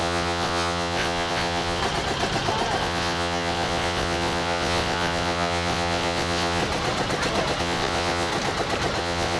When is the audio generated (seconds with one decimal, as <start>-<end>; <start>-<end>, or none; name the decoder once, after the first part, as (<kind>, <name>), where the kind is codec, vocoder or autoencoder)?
0.0-1.8 (vocoder, WaveNeXt); 2.8-6.6; 7.6-8.3; 9.0-9.4